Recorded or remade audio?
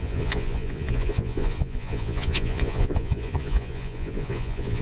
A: remade